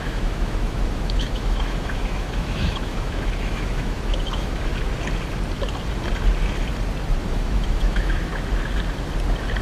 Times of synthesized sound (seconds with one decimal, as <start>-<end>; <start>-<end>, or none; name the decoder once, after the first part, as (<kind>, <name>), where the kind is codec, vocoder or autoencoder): 0.0-4.7 (autoencoder, DAC-VAE); 7.2-8.3